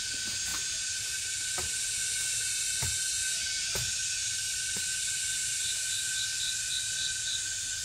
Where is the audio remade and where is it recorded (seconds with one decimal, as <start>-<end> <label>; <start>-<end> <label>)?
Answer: 0.0-4.2 recorded; 4.2-6.7 remade; 6.7-7.8 recorded